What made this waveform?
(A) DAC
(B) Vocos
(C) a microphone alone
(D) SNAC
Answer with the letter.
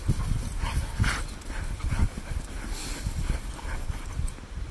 C